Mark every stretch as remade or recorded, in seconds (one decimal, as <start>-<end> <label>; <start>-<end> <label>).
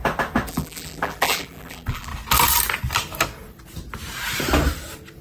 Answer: 0.0-0.5 recorded; 0.5-2.1 remade; 2.1-5.2 recorded